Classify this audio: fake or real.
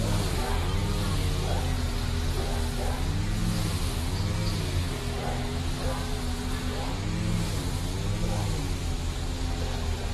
real